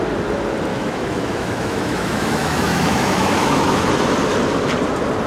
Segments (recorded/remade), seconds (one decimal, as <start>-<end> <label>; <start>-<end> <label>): 0.0-0.7 recorded; 0.7-3.9 remade; 3.9-5.3 recorded